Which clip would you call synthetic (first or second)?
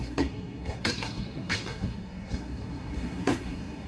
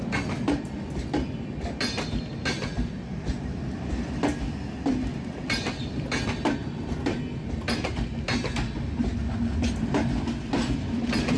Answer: first